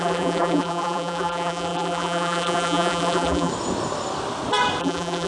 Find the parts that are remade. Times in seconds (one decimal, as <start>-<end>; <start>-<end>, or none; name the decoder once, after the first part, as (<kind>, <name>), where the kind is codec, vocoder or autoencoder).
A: 0.0-3.5 (vocoder, BigVGAN v2); 4.8-5.3